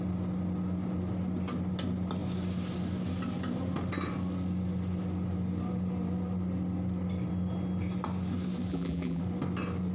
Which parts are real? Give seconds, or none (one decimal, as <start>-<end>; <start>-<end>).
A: 0.0-8.7; 9.2-9.9